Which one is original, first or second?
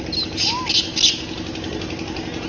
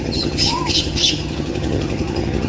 first